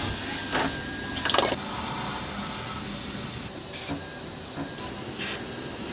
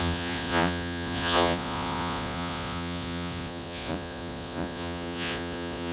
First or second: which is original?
first